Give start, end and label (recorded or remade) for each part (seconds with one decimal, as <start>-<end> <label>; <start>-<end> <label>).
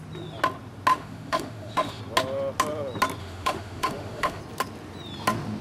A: 0.0-0.9 recorded; 0.9-2.0 remade; 2.0-3.2 recorded; 3.2-4.4 remade; 4.4-5.6 recorded